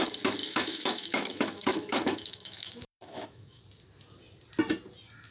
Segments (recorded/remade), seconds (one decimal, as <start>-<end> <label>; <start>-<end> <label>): 0.0-0.4 recorded; 0.4-3.6 remade; 3.6-5.3 recorded